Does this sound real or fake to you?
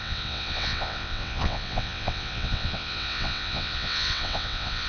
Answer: fake